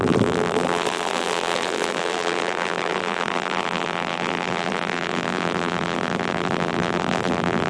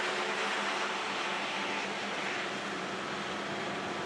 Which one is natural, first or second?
second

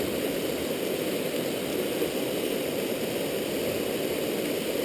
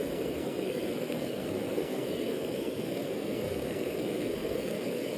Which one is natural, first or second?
first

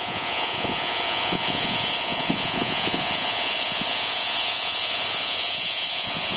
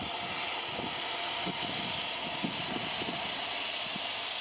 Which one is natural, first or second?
second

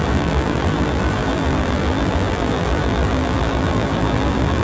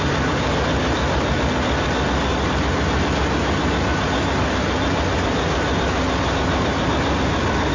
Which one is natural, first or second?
second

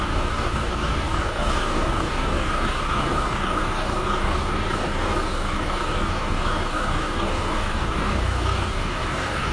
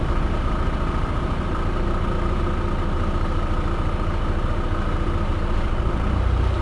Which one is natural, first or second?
second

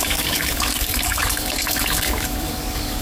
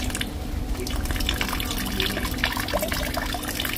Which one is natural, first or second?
second